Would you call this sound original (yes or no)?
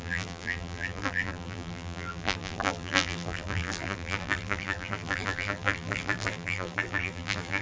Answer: no